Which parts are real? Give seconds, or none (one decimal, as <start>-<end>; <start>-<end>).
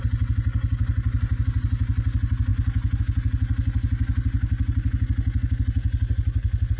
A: 0.0-6.8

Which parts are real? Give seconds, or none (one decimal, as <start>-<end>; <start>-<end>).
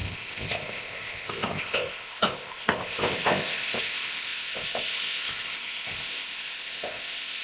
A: none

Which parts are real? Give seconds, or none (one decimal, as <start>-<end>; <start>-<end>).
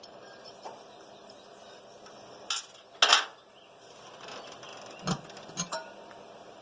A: 0.0-6.6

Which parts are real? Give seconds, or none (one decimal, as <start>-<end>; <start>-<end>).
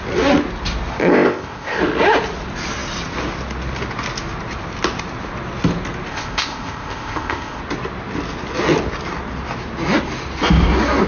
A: 0.0-1.0; 1.8-6.1; 7.6-11.1